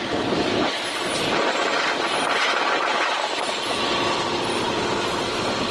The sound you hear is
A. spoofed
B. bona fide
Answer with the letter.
B